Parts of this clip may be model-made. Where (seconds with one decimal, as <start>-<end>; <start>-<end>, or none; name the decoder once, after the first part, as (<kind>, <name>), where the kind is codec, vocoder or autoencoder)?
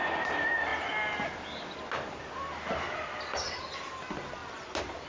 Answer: none